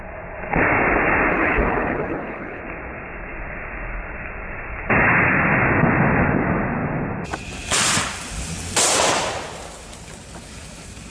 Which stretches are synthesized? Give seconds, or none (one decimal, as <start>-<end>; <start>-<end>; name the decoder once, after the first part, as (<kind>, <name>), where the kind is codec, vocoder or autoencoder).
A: 1.3-2.6 (codec, HILCodec)